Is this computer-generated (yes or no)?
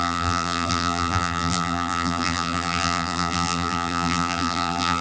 yes